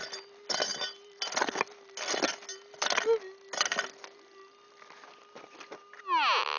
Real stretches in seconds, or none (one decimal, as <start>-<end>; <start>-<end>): 0.0-6.6

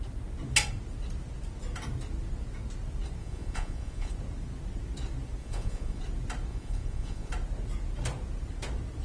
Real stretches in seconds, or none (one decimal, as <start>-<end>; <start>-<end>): 0.0-3.2; 4.1-5.4; 6.0-6.5; 7.3-9.0

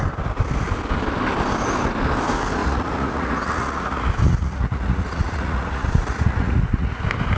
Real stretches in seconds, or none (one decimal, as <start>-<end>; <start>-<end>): 0.0-2.6; 7.0-7.4

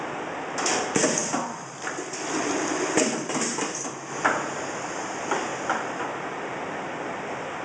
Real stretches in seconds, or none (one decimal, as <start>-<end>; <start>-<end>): 0.0-1.2; 2.4-7.6